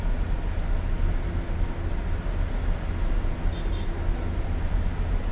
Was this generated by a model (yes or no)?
no